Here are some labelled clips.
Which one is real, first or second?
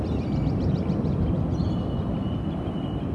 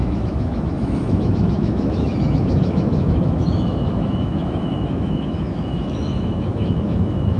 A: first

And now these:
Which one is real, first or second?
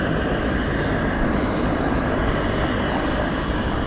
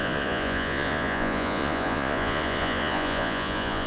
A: first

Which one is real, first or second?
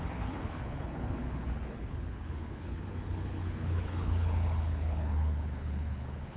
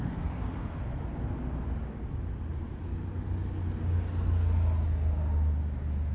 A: second